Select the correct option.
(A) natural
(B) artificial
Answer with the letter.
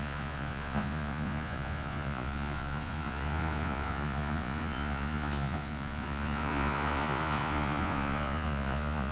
B